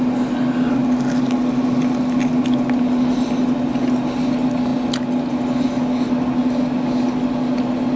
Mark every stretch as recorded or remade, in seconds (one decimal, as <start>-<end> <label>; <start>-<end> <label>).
0.0-8.0 recorded